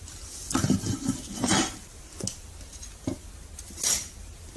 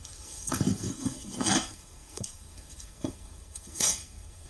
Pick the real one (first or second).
first